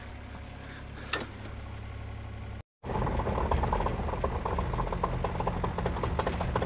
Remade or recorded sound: recorded